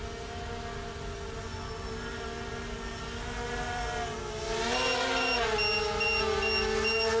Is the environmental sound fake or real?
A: real